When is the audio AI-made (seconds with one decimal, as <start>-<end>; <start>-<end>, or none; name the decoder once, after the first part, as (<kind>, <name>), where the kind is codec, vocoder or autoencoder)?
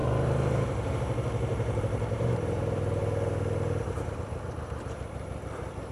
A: 0.0-3.0 (vocoder, BigVGAN v2); 3.9-5.9